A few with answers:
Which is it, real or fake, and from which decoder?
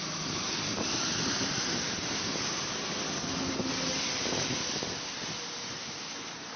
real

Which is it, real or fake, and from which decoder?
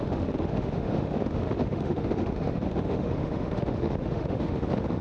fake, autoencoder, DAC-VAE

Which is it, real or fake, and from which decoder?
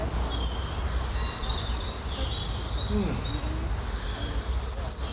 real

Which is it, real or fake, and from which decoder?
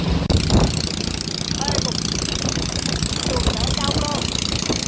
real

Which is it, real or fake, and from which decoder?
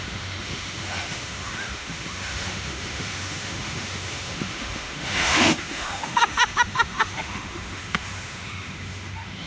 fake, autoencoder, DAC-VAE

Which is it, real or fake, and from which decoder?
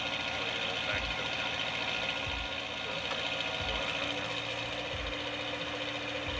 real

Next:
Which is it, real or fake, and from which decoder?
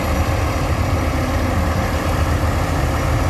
real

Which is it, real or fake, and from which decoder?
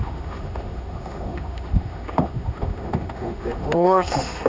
fake, autoencoder, DAC-VAE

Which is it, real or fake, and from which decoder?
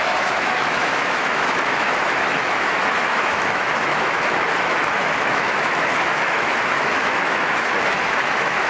fake, autoencoder, DAC-VAE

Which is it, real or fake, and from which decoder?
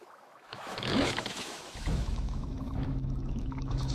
fake, autoencoder, DAC-VAE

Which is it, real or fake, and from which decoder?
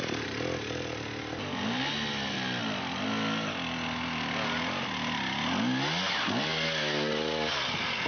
real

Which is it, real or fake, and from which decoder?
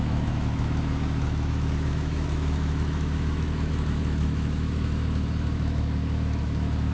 fake, autoencoder, DAC-VAE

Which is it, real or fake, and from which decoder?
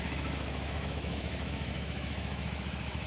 fake, autoencoder, DAC-VAE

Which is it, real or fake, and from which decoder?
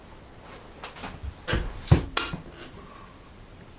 real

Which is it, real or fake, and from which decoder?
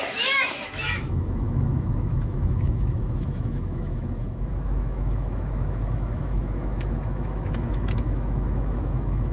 fake, autoencoder, DAC-VAE